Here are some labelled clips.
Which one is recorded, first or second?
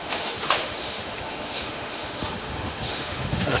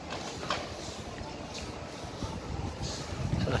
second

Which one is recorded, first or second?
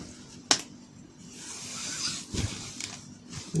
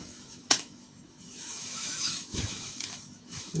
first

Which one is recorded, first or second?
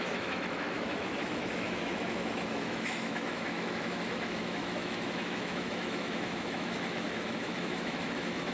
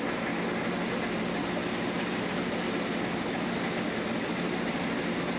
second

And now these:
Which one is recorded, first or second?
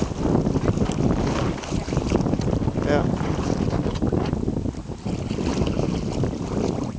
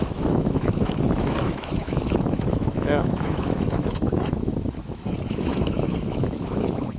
first